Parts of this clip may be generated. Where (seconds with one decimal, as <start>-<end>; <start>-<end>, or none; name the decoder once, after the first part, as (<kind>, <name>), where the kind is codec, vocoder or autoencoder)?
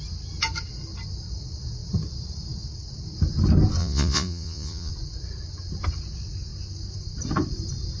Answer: 3.8-4.9 (vocoder, Vocos)